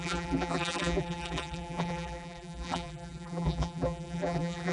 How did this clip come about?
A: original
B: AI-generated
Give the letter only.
B